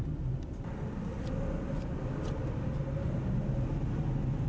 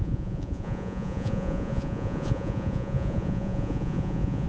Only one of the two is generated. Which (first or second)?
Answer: second